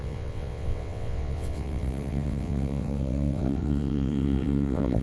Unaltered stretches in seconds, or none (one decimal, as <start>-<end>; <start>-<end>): none